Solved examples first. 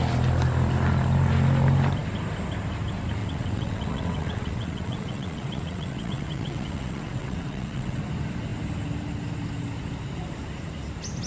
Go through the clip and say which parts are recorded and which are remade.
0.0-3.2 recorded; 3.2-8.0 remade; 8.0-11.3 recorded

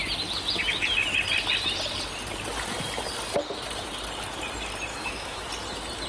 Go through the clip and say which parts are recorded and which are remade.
0.0-4.9 recorded; 4.9-5.5 remade; 5.5-6.1 recorded

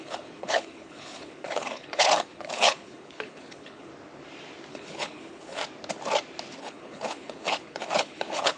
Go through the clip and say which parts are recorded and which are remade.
0.0-3.9 remade; 3.9-4.7 recorded; 4.7-5.6 remade; 5.6-6.6 recorded; 6.6-8.6 remade

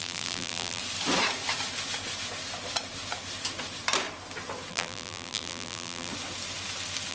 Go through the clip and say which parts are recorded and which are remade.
0.0-0.8 remade; 0.8-4.7 recorded; 4.7-6.1 remade; 6.1-7.1 recorded

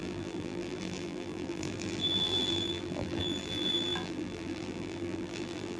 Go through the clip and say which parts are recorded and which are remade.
0.0-5.8 remade

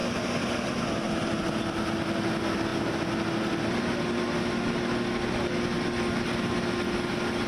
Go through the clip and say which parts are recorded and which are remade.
0.0-7.5 recorded

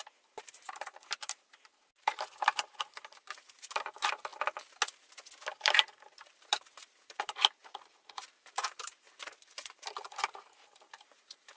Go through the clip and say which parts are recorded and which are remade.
0.0-4.3 remade; 4.3-5.6 recorded; 5.6-11.6 remade

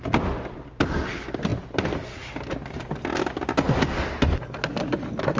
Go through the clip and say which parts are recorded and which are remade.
0.0-5.4 recorded